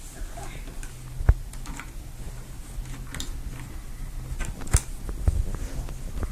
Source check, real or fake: real